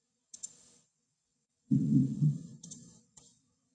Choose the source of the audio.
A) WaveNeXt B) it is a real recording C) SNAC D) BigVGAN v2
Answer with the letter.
A